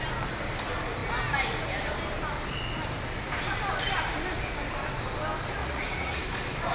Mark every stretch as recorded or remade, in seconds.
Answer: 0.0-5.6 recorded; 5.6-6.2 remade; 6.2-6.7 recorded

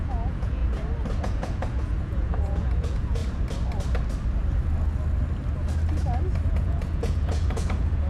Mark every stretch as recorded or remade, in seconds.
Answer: 0.0-0.6 remade; 0.6-1.2 recorded; 1.2-3.2 remade; 3.2-6.5 recorded; 6.5-8.1 remade

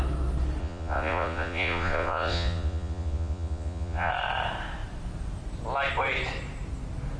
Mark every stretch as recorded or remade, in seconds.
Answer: 0.0-0.6 recorded; 0.6-4.1 remade; 4.1-7.2 recorded

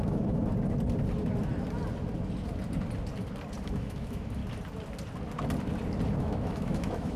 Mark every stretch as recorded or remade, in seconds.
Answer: 0.0-0.5 remade; 0.5-3.6 recorded; 3.6-4.4 remade; 4.4-6.2 recorded; 6.2-7.2 remade

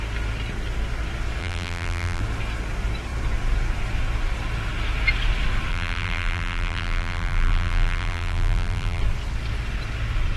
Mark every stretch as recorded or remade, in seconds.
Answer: 0.0-1.4 recorded; 1.4-2.2 remade; 2.2-5.7 recorded; 5.7-9.0 remade; 9.0-10.4 recorded

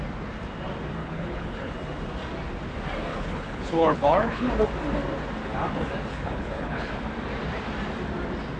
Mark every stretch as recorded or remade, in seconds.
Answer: 0.0-1.0 recorded; 1.0-1.7 remade; 1.7-3.1 recorded; 3.1-4.5 remade; 4.5-6.1 recorded; 6.1-6.9 remade; 6.9-8.6 recorded